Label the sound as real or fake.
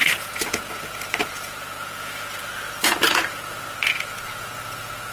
fake